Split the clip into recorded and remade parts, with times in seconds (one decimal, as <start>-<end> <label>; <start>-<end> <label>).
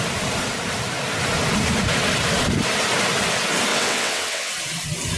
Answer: 0.0-3.7 recorded; 3.7-4.5 remade; 4.5-5.2 recorded